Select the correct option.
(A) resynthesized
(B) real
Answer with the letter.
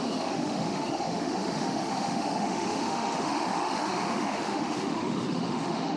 A